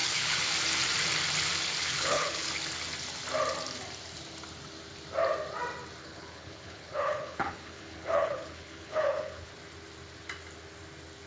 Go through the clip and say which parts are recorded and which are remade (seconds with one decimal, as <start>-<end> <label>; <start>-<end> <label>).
0.0-0.5 remade; 0.5-1.8 recorded; 1.8-2.5 remade; 2.5-6.0 recorded; 6.0-9.5 remade; 9.5-11.3 recorded